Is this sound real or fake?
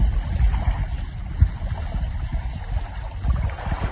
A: real